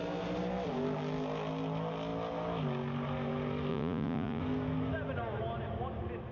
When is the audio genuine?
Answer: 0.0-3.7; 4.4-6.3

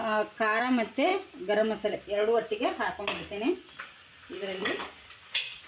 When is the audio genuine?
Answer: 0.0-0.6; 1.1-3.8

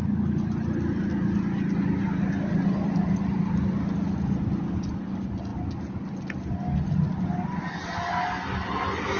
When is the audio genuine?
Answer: 0.0-9.2

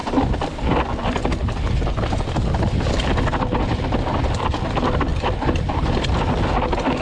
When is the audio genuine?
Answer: 0.0-5.1; 6.4-7.0